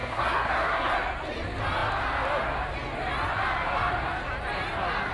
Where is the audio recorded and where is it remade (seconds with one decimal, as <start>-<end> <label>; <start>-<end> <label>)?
0.0-0.9 remade; 0.9-5.1 recorded